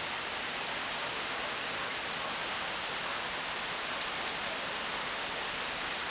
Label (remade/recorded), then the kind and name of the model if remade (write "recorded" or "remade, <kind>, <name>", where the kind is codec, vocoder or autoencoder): recorded